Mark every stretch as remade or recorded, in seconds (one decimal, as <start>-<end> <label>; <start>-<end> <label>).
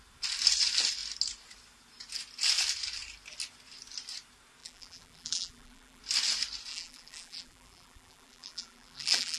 0.0-4.6 recorded; 4.6-6.0 remade; 6.0-6.7 recorded; 6.7-9.4 remade